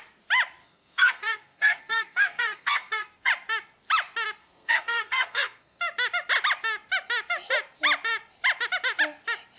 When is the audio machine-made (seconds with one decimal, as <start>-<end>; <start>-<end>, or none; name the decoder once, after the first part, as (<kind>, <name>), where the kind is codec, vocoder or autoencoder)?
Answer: 0.6-3.3 (codec, SNAC); 4.4-5.8